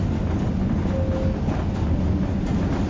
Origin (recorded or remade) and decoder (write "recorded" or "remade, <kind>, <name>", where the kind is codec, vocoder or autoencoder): recorded